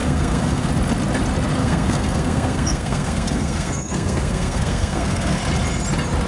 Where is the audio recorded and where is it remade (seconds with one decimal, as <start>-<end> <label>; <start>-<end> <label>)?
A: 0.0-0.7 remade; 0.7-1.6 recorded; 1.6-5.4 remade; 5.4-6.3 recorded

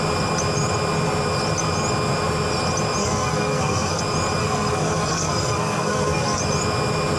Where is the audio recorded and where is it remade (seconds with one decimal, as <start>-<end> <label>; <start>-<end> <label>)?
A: 0.0-3.0 recorded; 3.0-4.0 remade; 4.0-4.4 recorded; 4.4-6.4 remade; 6.4-7.2 recorded

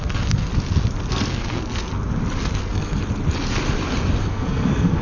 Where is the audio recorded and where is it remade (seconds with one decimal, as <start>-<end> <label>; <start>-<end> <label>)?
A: 0.0-0.5 remade; 0.5-1.1 recorded; 1.1-1.9 remade; 1.9-2.6 recorded; 2.6-3.0 remade; 3.0-4.2 recorded; 4.2-5.0 remade